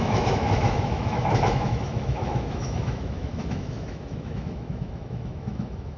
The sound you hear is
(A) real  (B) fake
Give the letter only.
B